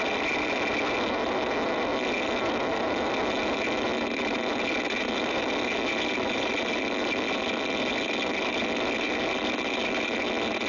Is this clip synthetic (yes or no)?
no